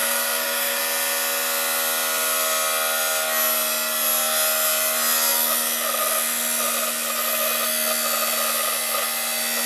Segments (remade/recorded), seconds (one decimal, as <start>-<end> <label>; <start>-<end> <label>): 0.0-0.8 remade; 0.8-9.7 recorded